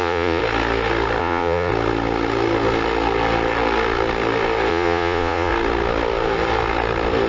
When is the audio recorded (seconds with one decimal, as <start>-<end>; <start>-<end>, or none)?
0.4-1.2; 1.7-4.7; 5.5-7.3